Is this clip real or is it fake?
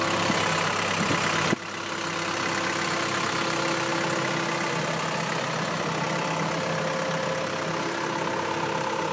real